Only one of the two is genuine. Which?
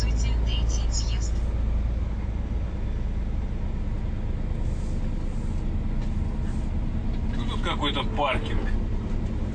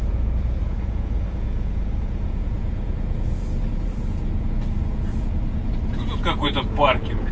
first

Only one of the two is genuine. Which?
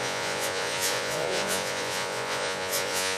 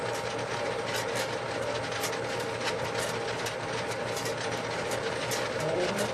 second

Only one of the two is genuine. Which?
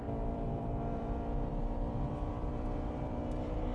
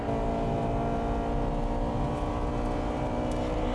second